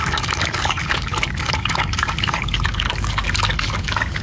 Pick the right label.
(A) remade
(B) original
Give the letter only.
A